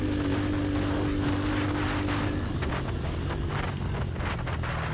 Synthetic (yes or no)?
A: no